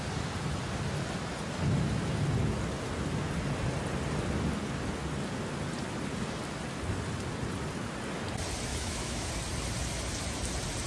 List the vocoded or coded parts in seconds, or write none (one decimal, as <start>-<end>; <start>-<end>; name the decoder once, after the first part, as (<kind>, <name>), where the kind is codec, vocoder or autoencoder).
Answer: 8.7-9.3 (autoencoder, DAC-VAE)